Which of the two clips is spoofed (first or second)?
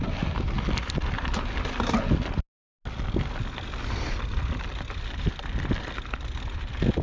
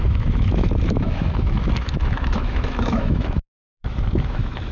second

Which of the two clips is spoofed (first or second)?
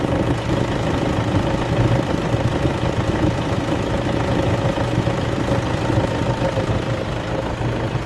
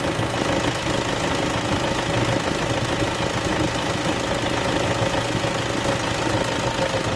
first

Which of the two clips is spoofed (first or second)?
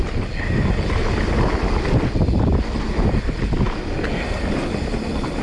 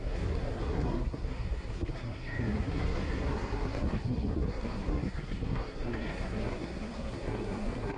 second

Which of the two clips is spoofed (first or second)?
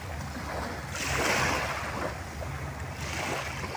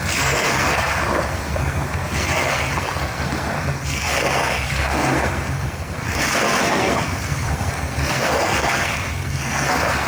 second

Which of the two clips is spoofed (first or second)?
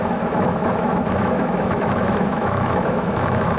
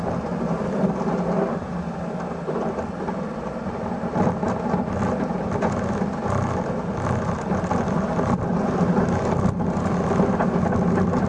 first